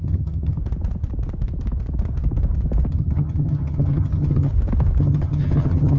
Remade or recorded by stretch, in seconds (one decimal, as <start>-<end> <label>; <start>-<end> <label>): 0.0-0.6 remade; 0.6-2.9 recorded; 2.9-4.5 remade; 4.5-5.0 recorded; 5.0-6.0 remade